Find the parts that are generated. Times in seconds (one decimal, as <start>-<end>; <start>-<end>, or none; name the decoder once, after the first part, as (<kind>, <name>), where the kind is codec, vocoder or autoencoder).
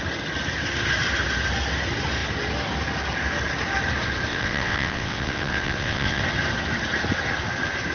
4.3-6.2 (vocoder, WaveNeXt)